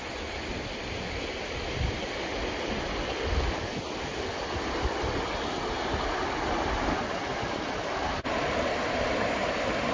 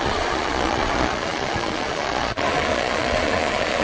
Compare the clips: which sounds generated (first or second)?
second